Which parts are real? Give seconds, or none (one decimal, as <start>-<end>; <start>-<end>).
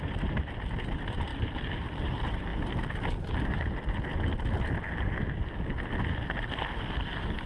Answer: 1.3-2.0; 2.5-6.9